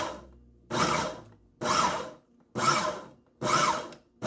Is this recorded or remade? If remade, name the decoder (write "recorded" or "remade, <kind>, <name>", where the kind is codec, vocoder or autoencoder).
recorded